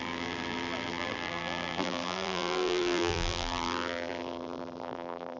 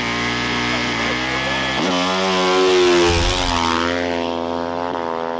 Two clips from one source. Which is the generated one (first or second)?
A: first